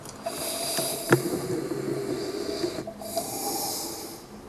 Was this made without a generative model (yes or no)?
yes